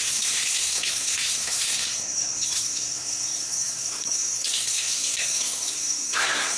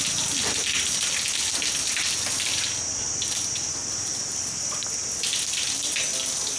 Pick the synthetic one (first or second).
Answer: first